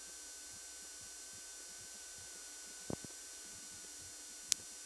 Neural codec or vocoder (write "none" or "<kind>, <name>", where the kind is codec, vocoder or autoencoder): none